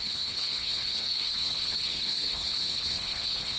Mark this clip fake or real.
fake